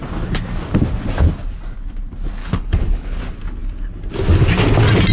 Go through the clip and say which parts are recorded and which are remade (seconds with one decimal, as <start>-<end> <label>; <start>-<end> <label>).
0.0-2.4 recorded; 2.4-3.2 remade; 3.2-5.1 recorded